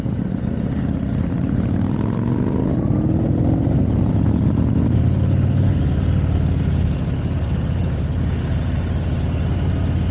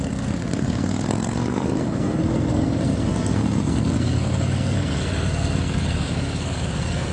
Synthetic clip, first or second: second